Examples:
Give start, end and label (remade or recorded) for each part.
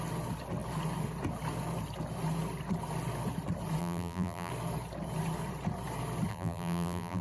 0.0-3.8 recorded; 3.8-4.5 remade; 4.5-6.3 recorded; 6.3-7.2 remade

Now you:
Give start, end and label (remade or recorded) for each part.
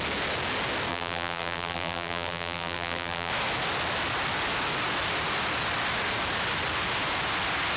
0.0-0.9 recorded; 0.9-3.3 remade; 3.3-7.8 recorded